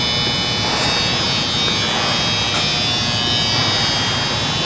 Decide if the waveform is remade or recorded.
recorded